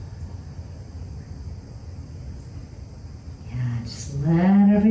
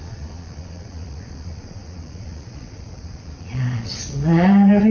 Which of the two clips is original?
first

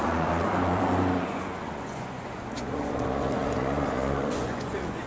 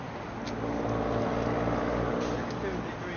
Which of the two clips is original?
second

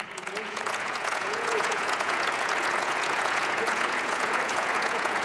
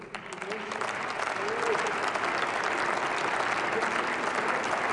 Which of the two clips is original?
second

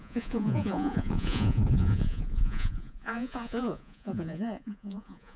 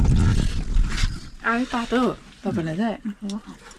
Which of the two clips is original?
second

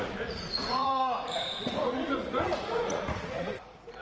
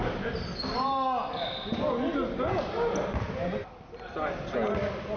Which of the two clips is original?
second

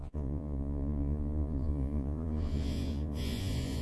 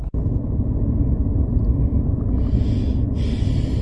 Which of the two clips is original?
second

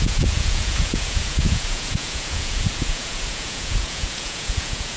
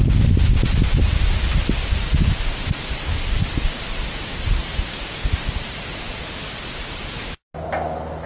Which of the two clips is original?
second